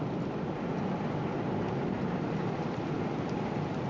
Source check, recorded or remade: remade